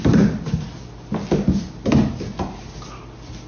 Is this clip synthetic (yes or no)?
no